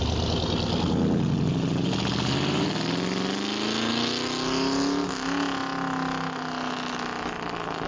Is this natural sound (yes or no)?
yes